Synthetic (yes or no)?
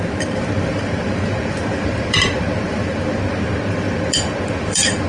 yes